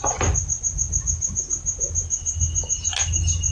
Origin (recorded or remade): recorded